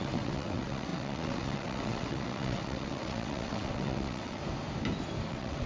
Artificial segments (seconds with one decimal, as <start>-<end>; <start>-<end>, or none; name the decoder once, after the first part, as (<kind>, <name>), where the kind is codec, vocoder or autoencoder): 0.0-4.4 (vocoder, WaveNeXt); 5.3-5.7